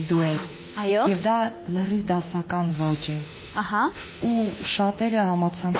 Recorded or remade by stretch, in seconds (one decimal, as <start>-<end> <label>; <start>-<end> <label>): 0.0-5.8 remade